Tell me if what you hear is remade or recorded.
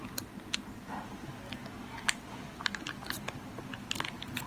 recorded